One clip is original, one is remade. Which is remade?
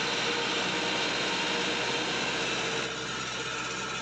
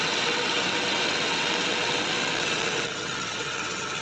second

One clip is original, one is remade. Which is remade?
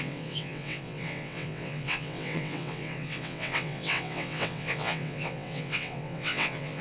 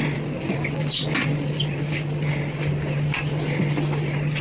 first